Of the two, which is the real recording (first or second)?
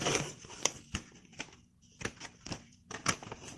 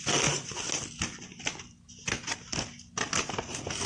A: second